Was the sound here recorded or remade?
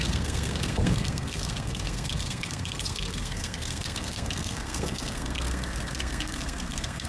remade